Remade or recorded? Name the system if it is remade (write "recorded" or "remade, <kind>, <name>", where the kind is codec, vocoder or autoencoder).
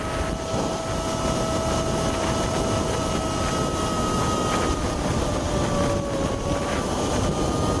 recorded